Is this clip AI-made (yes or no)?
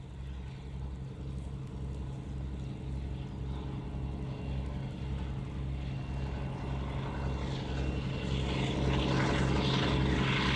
no